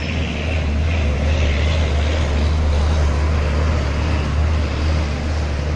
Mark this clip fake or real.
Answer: real